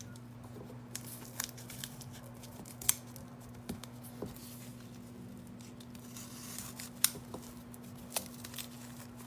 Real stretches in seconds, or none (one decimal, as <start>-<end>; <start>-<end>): 0.0-9.3